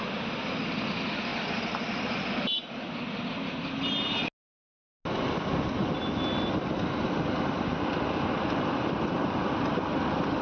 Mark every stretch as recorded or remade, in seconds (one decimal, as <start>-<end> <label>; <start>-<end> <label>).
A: 0.0-10.4 recorded